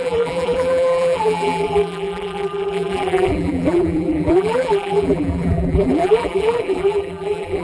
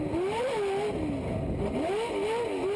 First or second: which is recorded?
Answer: second